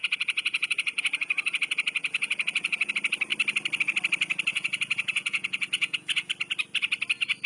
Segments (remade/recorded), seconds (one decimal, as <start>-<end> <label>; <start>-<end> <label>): 0.0-2.9 remade; 2.9-4.5 recorded; 4.5-6.3 remade; 6.3-7.5 recorded